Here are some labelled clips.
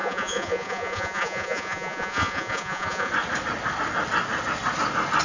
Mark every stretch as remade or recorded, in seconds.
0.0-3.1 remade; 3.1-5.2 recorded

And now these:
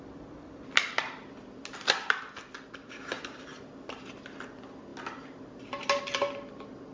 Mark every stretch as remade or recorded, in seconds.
0.0-6.9 recorded

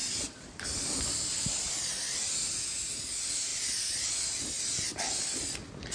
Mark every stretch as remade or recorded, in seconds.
0.0-0.8 remade; 0.8-5.9 recorded

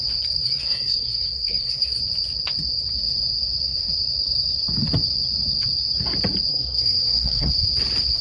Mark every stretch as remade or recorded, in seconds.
0.0-0.4 recorded; 0.4-2.0 remade; 2.0-6.5 recorded; 6.5-7.5 remade; 7.5-8.2 recorded

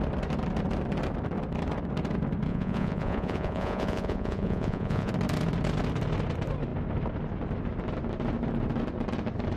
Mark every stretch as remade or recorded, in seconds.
0.0-2.5 recorded; 2.5-5.1 remade; 5.1-9.6 recorded

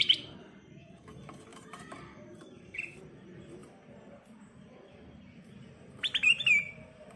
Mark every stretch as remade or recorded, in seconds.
0.0-7.2 remade

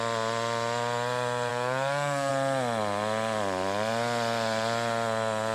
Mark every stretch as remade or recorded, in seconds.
0.0-1.5 recorded; 1.5-2.3 remade; 2.3-5.5 recorded